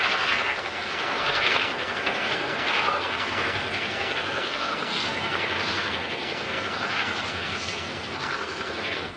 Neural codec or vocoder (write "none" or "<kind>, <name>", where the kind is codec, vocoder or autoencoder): codec, SNAC